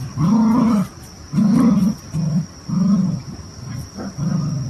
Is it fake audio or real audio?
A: real